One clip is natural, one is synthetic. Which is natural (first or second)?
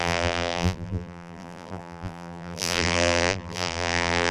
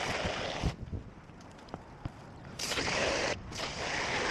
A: second